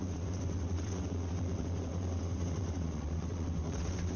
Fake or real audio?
fake